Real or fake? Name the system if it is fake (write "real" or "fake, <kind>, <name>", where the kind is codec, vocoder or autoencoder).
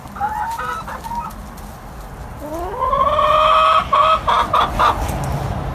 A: real